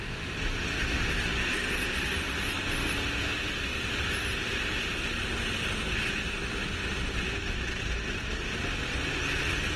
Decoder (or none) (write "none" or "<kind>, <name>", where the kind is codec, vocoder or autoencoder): none